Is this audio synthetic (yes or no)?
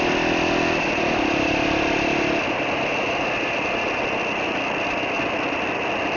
no